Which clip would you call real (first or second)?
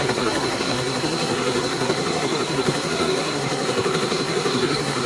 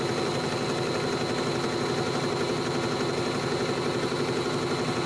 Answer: second